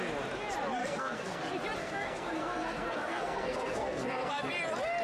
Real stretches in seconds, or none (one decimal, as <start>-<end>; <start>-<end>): 0.0-0.8; 1.4-1.8; 4.3-5.0